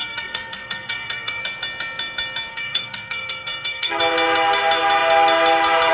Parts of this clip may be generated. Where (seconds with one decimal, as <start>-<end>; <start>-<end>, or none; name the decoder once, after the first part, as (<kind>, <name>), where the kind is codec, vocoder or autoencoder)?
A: 0.0-1.4 (codec, SNAC); 2.5-4.0